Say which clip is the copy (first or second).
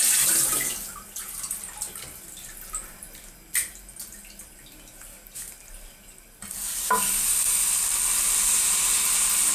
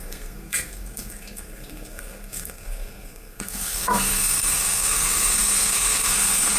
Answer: second